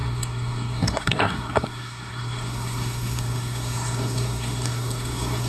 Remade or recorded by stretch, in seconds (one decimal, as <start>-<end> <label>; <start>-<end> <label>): 0.0-5.5 remade